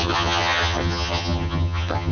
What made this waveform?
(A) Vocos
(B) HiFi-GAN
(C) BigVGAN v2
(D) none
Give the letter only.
B